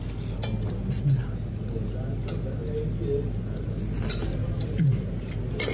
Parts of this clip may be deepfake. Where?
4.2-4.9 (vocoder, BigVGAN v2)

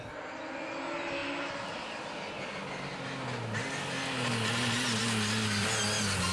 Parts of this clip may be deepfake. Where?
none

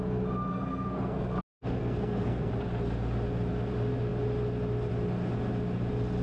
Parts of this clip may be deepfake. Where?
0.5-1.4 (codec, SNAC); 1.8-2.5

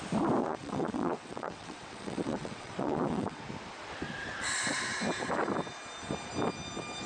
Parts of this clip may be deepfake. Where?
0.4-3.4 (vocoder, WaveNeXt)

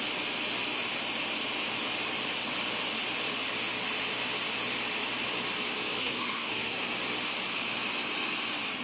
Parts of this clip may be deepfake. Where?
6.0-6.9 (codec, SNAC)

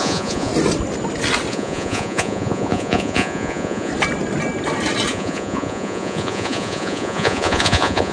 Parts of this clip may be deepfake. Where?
0.0-0.5 (vocoder, Vocos); 1.5-3.9; 5.1-8.1